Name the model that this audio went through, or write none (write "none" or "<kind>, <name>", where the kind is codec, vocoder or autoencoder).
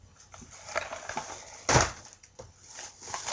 none